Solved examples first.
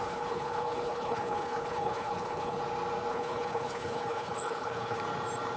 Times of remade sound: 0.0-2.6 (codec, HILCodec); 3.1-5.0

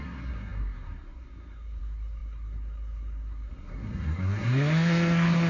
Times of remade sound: 0.0-5.5 (codec, SNAC)

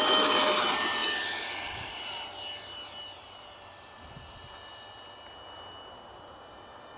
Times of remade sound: 1.0-3.9 (vocoder, BigVGAN v2)

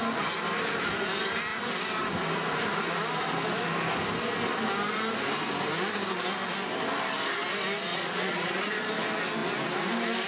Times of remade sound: 7.9-8.9 (vocoder, Vocos)

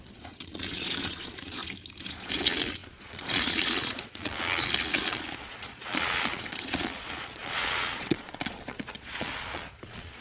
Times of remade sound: 0.0-1.6 (vocoder, Vocos); 2.1-10.2

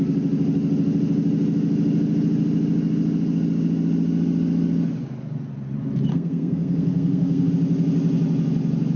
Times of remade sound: 6.1-7.5 (codec, SNAC)

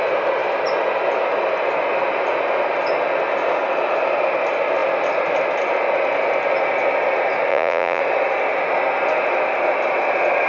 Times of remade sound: 7.5-8.0 (vocoder, Vocos)

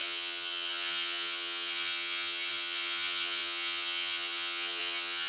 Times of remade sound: 0.0-5.3 (vocoder, HiFi-GAN)